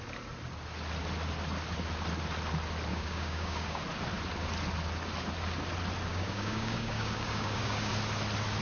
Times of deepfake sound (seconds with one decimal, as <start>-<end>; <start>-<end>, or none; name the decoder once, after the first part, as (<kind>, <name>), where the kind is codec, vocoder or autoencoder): 2.9-3.8 (codec, DAC); 6.1-7.9